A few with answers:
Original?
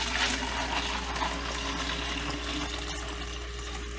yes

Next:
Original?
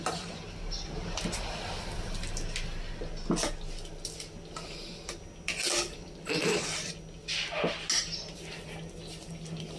yes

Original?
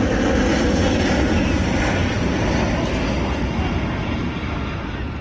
yes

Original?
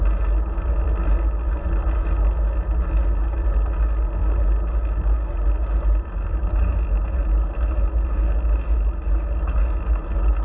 yes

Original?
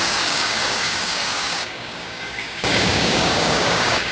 no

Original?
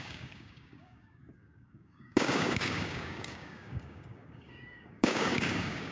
no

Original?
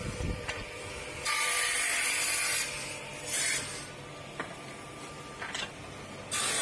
yes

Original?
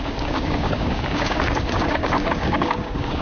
no